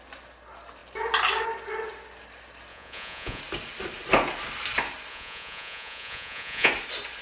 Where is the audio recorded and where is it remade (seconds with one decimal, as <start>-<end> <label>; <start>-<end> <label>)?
0.0-2.7 recorded; 2.7-3.4 remade; 3.4-5.1 recorded; 5.1-6.7 remade; 6.7-7.2 recorded